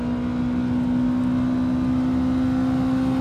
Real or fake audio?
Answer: real